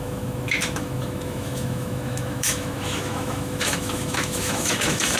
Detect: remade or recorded remade